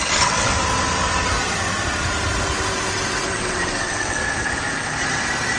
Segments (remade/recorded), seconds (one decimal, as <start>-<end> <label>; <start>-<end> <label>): 0.0-0.5 remade; 0.5-3.3 recorded; 3.3-4.2 remade; 4.2-5.6 recorded